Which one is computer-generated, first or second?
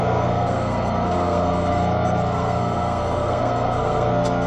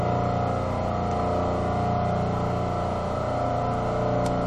first